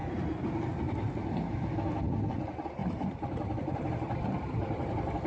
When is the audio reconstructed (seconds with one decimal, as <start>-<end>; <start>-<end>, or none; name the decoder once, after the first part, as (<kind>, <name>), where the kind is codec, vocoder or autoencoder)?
0.0-0.6 (vocoder, BigVGAN v2); 2.8-4.5